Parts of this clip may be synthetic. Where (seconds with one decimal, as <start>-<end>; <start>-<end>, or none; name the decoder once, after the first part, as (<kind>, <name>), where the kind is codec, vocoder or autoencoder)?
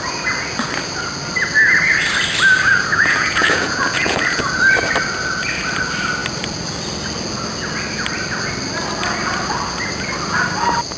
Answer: 2.9-4.4 (vocoder, Vocos)